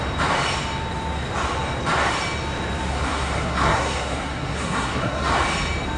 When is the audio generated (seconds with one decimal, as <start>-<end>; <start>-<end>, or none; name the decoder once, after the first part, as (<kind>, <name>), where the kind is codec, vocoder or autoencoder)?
2.9-5.3 (codec, SNAC)